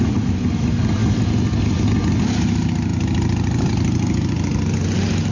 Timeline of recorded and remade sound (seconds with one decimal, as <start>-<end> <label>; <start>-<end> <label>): 0.0-5.3 recorded

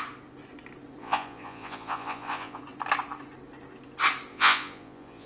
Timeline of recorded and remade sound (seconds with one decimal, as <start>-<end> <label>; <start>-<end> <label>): 0.0-1.0 recorded; 1.0-2.6 remade; 2.6-4.3 recorded; 4.3-5.3 remade

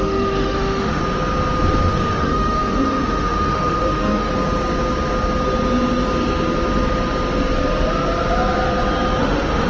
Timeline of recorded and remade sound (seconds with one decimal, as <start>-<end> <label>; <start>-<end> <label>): 0.0-1.0 remade; 1.0-1.9 recorded; 1.9-4.3 remade; 4.3-9.2 recorded; 9.2-9.7 remade

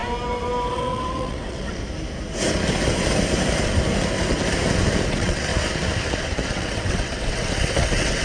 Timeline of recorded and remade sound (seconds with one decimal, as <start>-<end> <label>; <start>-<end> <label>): 0.0-0.7 recorded; 0.7-1.8 remade; 1.8-5.1 recorded; 5.1-5.5 remade; 5.5-6.5 recorded; 6.5-8.2 remade